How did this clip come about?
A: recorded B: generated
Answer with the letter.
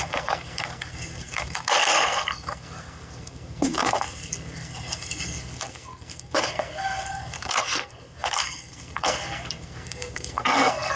B